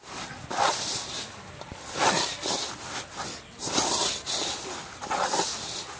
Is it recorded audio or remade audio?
recorded